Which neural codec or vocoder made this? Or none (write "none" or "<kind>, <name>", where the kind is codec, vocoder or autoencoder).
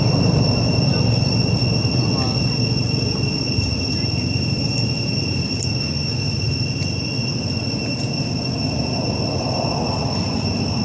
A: none